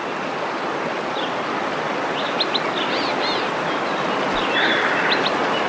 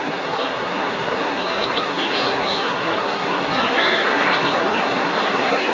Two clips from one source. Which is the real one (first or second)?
first